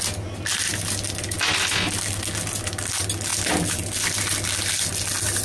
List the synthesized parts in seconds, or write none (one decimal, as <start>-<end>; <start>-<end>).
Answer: none